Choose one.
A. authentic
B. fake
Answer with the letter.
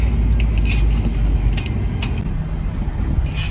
A